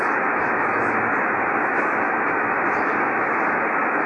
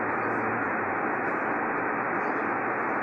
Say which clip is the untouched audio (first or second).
second